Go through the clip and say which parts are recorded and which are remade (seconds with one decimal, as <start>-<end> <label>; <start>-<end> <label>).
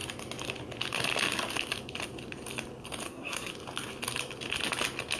0.0-3.1 recorded; 3.1-3.5 remade; 3.5-5.2 recorded